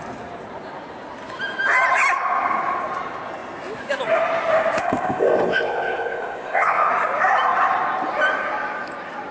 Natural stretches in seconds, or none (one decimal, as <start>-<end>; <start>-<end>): 0.0-4.8; 6.9-9.3